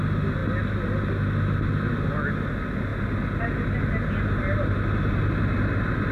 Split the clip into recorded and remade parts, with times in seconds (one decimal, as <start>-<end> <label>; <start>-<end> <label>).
0.0-6.1 recorded